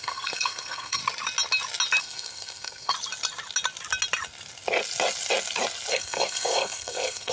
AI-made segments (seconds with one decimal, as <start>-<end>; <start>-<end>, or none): 0.0-1.0; 2.0-2.9; 5.9-7.3